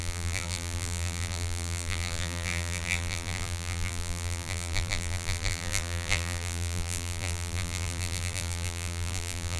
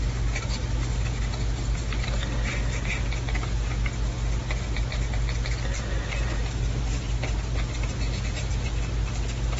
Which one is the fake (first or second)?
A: first